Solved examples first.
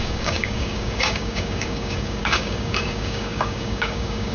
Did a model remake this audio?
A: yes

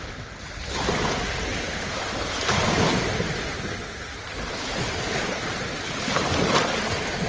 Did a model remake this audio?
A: no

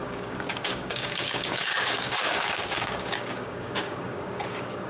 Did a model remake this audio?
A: yes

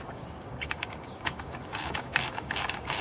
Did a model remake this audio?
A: yes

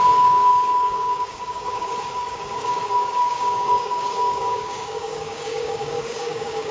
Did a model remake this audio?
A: yes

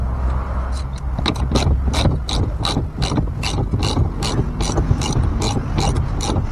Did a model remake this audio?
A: no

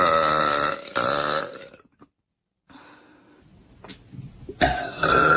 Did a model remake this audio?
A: no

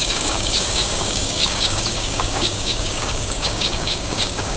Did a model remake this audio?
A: yes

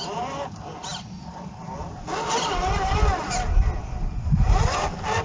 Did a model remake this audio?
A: no